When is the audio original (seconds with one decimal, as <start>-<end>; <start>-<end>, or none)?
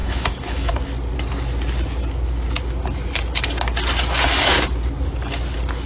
0.7-5.9